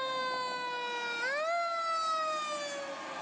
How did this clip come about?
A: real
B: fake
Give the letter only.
A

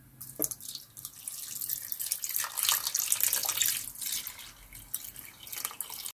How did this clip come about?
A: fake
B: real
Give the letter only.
B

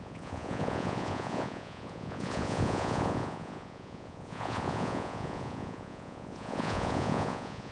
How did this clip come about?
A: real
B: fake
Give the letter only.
B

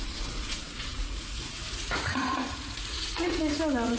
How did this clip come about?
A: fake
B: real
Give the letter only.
A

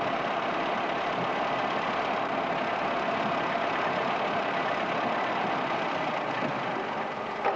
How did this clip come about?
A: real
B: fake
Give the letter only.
A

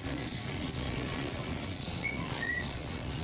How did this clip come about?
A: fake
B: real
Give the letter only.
A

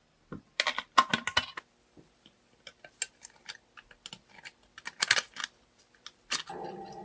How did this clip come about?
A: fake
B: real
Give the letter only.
B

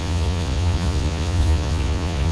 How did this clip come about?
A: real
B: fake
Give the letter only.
B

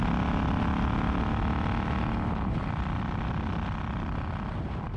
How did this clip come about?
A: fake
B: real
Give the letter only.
B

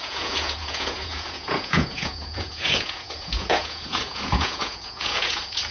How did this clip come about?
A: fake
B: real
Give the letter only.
A